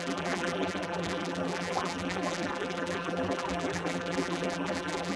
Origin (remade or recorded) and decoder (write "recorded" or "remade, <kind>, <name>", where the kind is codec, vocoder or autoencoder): remade, vocoder, BigVGAN v2